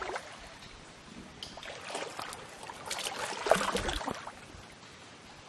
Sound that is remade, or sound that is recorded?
recorded